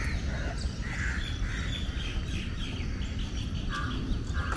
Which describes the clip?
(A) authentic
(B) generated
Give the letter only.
A